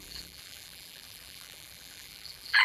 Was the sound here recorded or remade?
remade